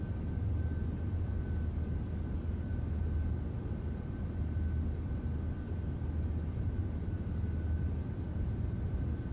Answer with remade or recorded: recorded